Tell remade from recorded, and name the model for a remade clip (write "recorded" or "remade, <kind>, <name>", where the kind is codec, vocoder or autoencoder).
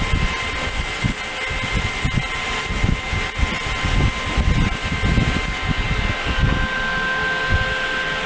recorded